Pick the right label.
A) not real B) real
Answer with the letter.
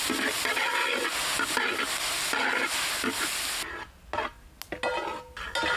B